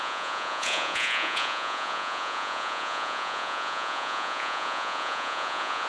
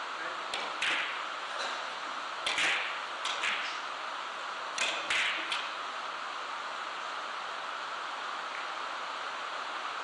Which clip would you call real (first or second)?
second